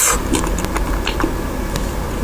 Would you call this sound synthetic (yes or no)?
no